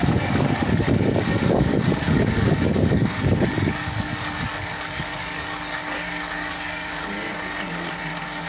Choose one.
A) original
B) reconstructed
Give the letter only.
B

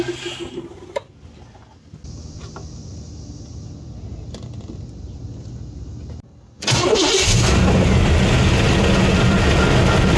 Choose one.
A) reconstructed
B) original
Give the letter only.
B